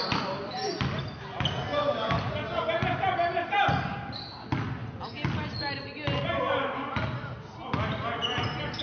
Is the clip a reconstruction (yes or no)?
no